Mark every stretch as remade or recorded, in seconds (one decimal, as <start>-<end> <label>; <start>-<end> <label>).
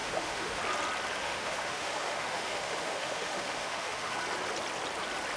0.0-0.6 remade; 0.6-1.2 recorded; 1.2-4.2 remade; 4.2-5.4 recorded